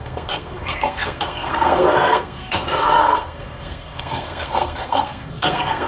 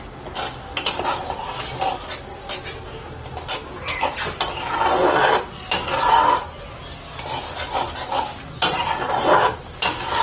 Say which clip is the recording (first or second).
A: second